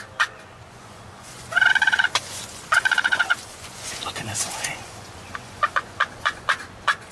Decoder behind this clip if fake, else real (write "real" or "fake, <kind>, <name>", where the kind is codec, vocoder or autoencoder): fake, vocoder, Vocos